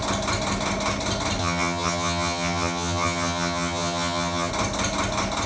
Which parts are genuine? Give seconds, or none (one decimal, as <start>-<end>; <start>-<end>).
0.0-1.4; 4.5-5.5